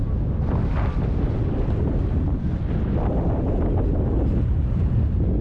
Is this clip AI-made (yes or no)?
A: no